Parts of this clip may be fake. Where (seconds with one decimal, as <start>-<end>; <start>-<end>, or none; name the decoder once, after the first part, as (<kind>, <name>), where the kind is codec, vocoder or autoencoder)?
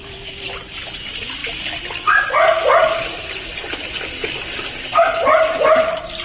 none